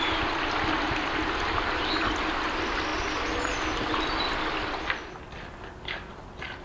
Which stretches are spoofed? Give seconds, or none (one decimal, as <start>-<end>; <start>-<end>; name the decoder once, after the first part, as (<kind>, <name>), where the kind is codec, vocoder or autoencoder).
none